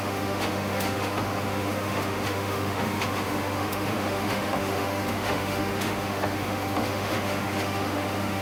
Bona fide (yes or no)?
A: no